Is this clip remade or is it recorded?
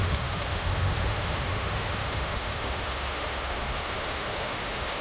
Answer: remade